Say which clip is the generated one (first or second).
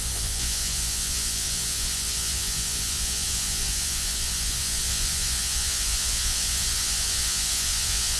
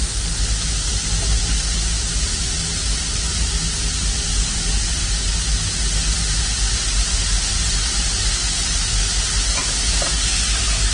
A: first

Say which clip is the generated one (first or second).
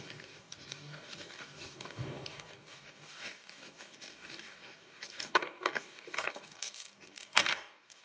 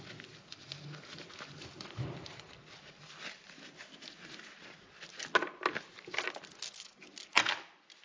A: first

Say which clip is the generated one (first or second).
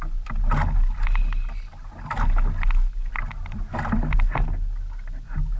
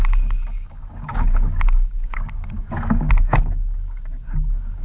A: second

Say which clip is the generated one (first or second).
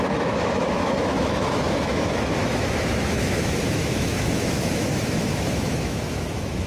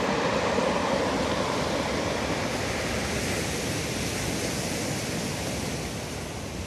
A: first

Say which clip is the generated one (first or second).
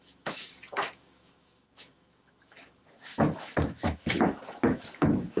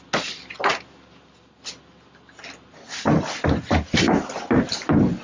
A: first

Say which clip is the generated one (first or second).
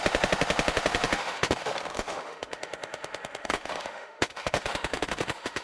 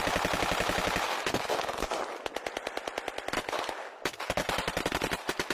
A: first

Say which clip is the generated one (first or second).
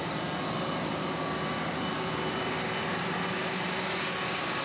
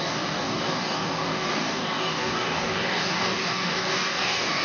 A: second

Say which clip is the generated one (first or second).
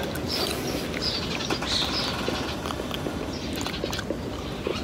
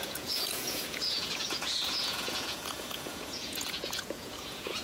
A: second